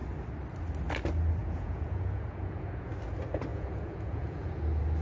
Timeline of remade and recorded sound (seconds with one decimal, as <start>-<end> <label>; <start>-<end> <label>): 0.0-1.4 recorded; 1.4-2.9 remade; 2.9-3.5 recorded; 3.5-4.6 remade; 4.6-5.0 recorded

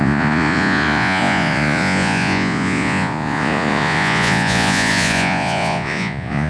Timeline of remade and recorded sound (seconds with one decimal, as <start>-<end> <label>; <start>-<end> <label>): 0.0-6.5 remade

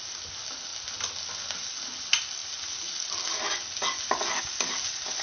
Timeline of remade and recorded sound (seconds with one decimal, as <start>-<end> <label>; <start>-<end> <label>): 0.0-5.2 recorded

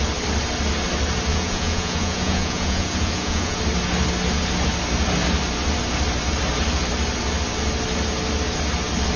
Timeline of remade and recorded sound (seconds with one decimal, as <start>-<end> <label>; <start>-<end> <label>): 0.0-1.3 recorded; 1.3-3.6 remade; 3.6-9.2 recorded

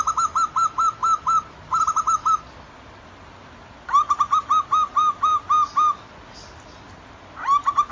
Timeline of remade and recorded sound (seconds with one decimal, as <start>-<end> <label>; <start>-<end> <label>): 0.0-7.9 recorded

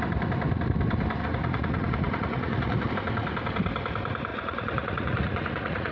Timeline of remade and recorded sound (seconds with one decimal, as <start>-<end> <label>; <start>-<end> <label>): 0.0-1.2 recorded; 1.2-2.9 remade; 2.9-4.3 recorded; 4.3-5.9 remade

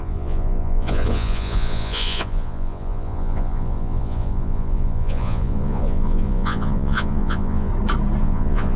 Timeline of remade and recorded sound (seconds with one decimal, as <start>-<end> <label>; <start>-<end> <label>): 0.0-7.7 remade; 7.7-8.2 recorded; 8.2-8.8 remade